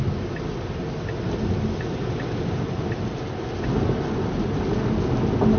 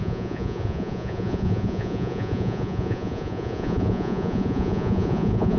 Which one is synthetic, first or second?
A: second